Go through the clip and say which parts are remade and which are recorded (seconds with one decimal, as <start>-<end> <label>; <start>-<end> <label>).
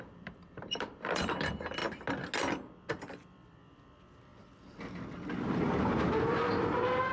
0.0-1.8 remade; 1.8-2.9 recorded; 2.9-4.3 remade; 4.3-7.1 recorded